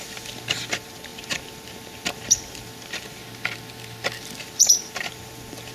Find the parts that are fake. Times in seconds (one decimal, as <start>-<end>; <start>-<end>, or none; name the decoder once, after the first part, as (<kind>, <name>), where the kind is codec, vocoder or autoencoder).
0.0-3.2 (vocoder, BigVGAN v2); 4.4-5.7